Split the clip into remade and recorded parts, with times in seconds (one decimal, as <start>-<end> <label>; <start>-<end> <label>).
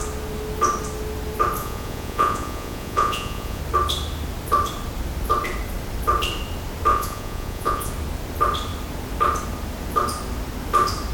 0.0-1.6 recorded; 1.6-3.6 remade; 3.6-6.9 recorded; 6.9-7.9 remade; 7.9-11.1 recorded